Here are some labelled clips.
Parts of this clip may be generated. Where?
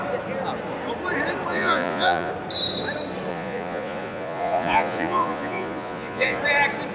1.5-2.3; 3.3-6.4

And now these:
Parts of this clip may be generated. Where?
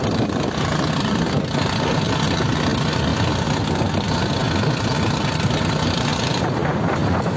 none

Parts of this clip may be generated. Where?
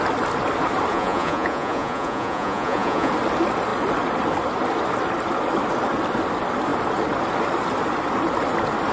0.9-3.1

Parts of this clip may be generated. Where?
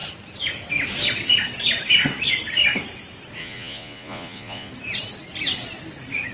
3.4-4.7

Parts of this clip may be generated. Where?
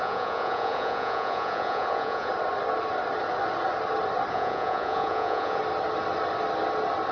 0.0-2.3; 4.3-5.6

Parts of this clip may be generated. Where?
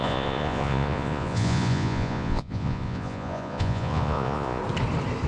0.0-4.6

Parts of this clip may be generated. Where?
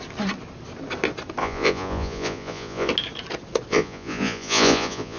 1.4-2.9; 3.7-5.2